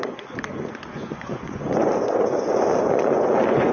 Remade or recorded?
remade